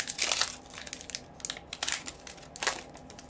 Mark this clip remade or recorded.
recorded